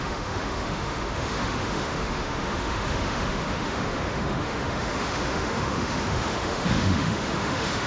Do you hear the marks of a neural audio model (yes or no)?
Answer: yes